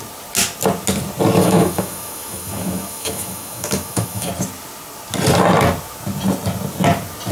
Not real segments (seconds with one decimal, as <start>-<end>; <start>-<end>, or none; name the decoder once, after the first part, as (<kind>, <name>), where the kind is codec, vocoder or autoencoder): 1.4-4.3 (autoencoder, DAC-VAE)